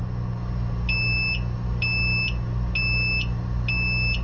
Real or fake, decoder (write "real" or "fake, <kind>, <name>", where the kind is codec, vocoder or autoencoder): real